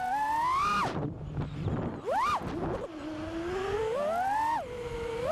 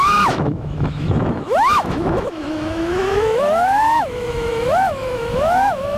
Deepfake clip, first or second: second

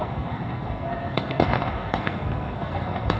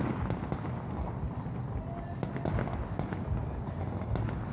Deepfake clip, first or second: first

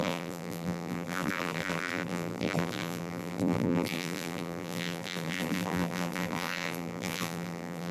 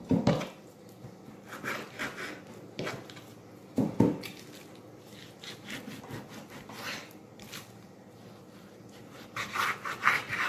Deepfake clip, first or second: first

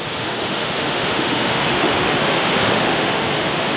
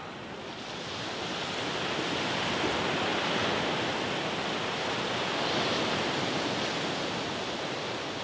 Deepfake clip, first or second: first